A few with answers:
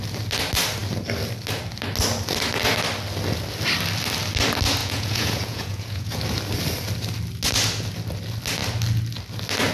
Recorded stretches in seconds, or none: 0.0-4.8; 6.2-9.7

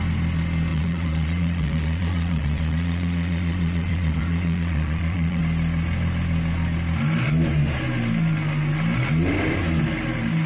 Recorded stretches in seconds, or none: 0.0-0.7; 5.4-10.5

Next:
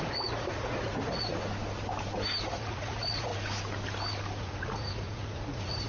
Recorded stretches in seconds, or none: 1.3-2.4; 3.3-4.4